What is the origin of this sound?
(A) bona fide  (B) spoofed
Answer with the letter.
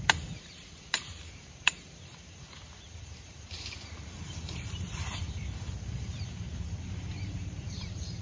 B